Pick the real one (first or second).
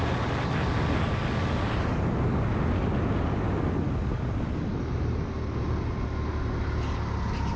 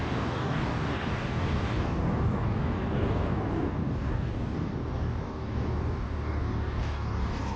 first